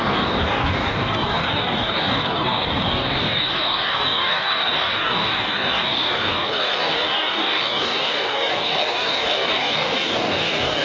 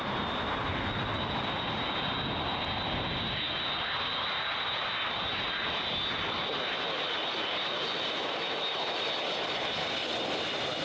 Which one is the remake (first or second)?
first